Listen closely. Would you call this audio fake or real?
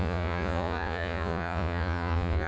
fake